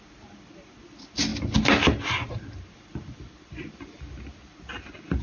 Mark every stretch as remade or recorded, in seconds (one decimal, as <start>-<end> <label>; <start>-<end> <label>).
0.0-5.2 recorded

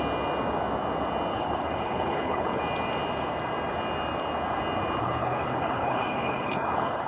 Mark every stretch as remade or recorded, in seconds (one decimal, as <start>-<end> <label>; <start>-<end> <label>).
0.0-1.3 recorded; 1.3-2.6 remade; 2.6-5.0 recorded; 5.0-7.1 remade

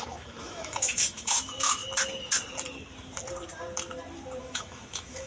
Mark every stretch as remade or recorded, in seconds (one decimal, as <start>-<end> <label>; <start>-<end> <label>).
0.0-1.8 remade; 1.8-4.4 recorded; 4.4-5.3 remade

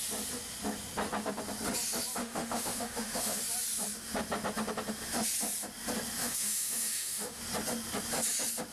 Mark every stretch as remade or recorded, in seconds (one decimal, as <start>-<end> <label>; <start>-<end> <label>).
0.0-2.2 recorded; 2.2-3.4 remade; 3.4-6.2 recorded; 6.2-7.4 remade; 7.4-8.7 recorded